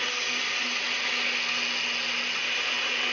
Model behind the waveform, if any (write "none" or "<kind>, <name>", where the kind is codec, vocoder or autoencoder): none